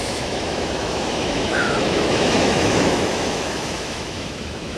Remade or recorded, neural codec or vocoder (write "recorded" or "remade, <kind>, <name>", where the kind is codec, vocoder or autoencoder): remade, autoencoder, DAC-VAE